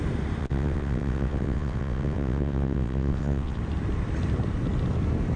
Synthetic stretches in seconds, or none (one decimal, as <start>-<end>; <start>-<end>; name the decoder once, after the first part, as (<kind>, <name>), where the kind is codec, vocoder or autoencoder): 0.4-3.6 (vocoder, WaveNeXt)